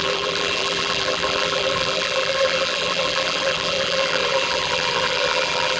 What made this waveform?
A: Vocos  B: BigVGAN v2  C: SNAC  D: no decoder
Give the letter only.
B